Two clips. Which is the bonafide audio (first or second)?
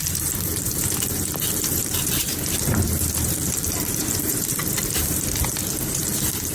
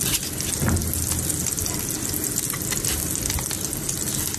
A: second